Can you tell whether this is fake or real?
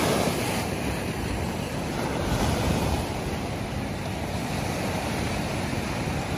fake